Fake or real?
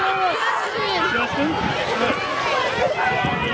real